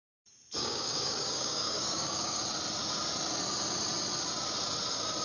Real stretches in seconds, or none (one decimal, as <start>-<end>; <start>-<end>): 0.0-0.6; 2.4-5.2